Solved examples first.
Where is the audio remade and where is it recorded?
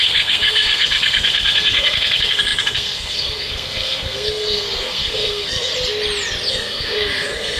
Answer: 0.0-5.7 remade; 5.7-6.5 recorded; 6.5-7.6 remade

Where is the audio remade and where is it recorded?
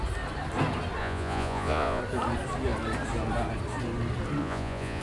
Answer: 0.0-1.0 recorded; 1.0-2.0 remade; 2.0-4.4 recorded; 4.4-5.0 remade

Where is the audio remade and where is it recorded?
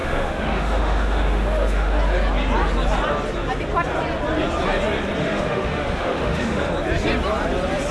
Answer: 0.0-2.0 remade; 2.0-5.2 recorded; 5.2-6.7 remade; 6.7-7.9 recorded